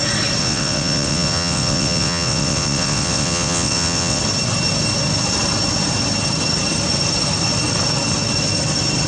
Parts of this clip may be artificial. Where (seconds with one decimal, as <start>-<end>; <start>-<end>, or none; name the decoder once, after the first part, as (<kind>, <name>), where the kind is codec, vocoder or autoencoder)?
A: 0.4-4.2 (vocoder, WaveNeXt)